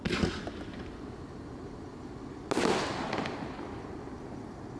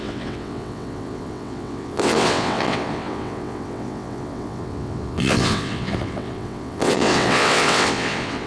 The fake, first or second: second